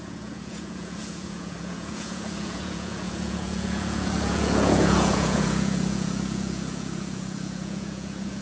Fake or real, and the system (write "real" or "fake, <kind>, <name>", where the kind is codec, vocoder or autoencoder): fake, vocoder, Vocos